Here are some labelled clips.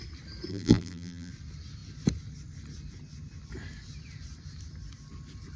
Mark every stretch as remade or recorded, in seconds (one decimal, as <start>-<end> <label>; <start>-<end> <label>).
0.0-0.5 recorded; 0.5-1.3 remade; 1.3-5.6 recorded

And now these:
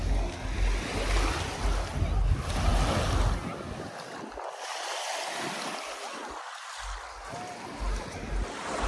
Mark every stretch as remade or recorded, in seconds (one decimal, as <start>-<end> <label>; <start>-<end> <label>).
0.0-8.9 recorded

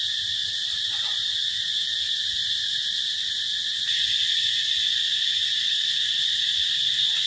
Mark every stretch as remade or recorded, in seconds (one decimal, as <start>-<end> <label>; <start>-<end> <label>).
0.0-7.3 recorded

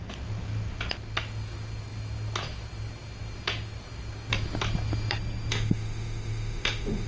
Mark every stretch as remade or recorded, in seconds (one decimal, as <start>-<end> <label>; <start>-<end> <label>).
0.0-5.5 recorded; 5.5-7.1 remade